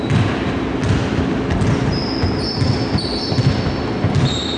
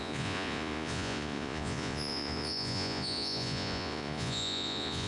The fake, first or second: second